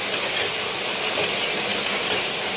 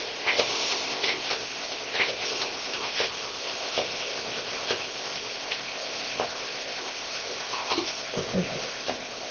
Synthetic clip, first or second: second